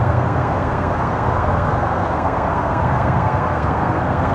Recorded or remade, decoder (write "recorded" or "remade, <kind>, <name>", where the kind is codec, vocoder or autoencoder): remade, codec, SNAC